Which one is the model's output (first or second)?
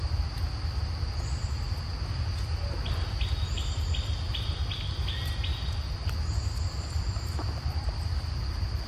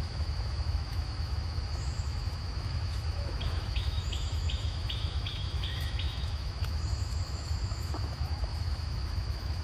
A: second